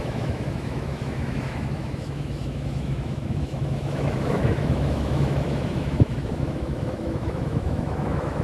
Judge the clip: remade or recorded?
remade